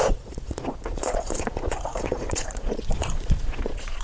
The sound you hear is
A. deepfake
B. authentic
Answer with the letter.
A